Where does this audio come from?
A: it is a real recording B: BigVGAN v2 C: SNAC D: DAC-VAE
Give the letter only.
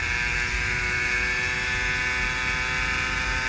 A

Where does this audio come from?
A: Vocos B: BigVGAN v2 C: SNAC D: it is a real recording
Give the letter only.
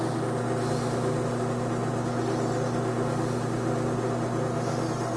B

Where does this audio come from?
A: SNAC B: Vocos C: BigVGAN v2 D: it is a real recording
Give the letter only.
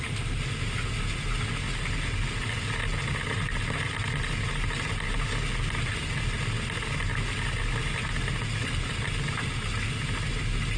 D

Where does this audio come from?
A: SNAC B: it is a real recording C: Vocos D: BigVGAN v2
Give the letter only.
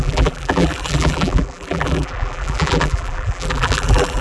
D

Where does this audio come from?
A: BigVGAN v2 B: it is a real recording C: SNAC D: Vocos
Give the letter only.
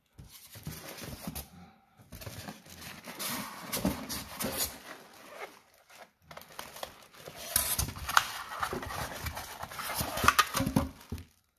B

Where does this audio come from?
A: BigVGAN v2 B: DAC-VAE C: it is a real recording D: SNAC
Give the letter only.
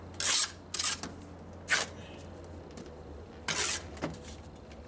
C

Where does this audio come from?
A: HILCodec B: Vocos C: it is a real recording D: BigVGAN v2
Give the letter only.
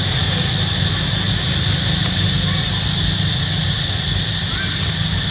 C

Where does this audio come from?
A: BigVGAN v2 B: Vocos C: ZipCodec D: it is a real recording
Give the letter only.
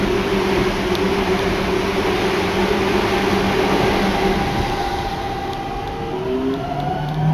D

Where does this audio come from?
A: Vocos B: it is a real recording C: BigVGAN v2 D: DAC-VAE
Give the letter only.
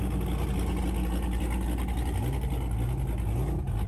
B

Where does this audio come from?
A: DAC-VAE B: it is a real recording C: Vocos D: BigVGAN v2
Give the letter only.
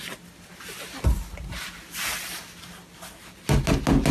B